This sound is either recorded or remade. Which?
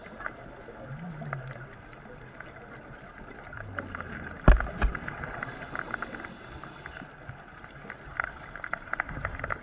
recorded